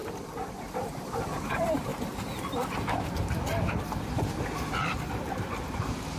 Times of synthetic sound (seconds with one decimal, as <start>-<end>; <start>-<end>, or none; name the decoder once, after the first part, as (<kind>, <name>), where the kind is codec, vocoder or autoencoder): 1.5-1.9 (vocoder, BigVGAN v2); 5.1-6.2